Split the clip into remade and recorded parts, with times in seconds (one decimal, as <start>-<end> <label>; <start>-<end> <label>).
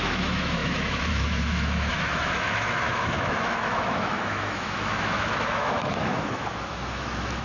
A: 0.0-7.4 remade